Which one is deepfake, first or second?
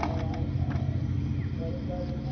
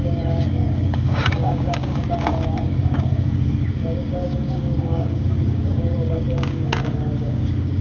second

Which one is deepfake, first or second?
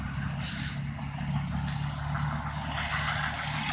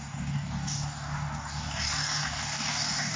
second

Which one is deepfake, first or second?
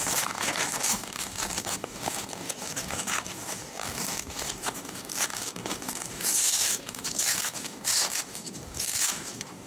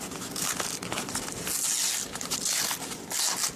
first